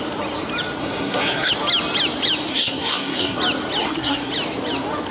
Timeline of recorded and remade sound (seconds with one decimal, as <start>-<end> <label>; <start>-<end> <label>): 0.0-0.8 recorded; 0.8-1.5 remade; 1.5-2.5 recorded; 2.5-3.4 remade; 3.4-3.8 recorded; 3.8-4.3 remade; 4.3-5.1 recorded